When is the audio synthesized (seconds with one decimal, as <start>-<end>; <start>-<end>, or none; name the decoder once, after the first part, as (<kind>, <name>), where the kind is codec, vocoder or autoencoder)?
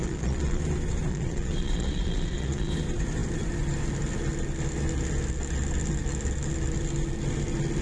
0.0-0.6 (vocoder, Vocos); 1.1-2.7